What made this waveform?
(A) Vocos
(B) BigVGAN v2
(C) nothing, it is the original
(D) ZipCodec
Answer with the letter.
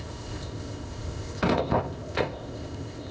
D